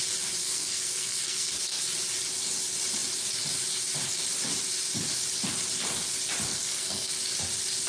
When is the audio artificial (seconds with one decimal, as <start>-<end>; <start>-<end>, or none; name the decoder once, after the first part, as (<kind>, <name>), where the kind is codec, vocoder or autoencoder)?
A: 0.4-1.8 (codec, SNAC); 6.5-7.1